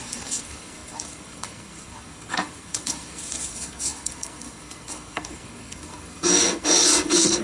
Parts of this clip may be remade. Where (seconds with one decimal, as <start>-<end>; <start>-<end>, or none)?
0.0-7.4